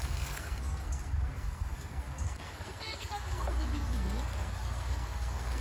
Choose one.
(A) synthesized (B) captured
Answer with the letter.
A